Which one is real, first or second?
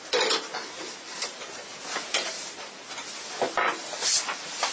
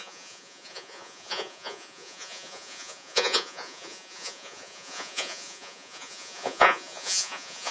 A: first